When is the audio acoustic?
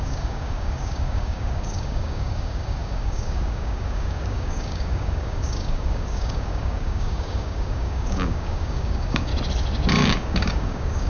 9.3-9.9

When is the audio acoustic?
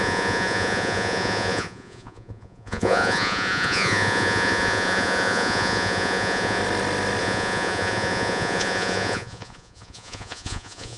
6.6-7.2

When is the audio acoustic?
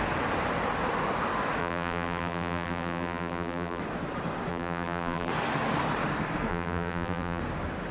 0.0-1.6; 3.8-4.5; 5.3-6.5; 7.4-7.9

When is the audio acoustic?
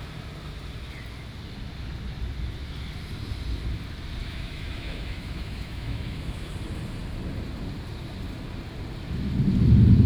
0.0-4.2; 6.5-10.1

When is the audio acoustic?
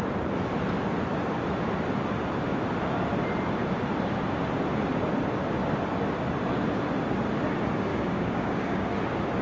0.0-7.9; 8.9-9.4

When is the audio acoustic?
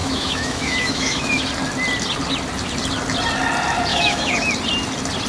1.4-3.9; 4.5-5.3